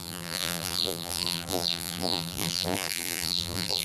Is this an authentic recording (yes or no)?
no